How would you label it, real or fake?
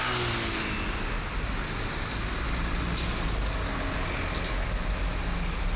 real